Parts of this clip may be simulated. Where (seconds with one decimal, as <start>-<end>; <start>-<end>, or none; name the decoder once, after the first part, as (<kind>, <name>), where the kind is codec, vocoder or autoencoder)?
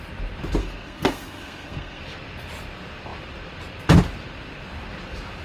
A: 0.6-2.0 (codec, SNAC)